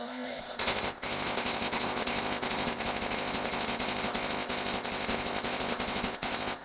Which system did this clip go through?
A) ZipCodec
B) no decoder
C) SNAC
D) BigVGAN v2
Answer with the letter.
A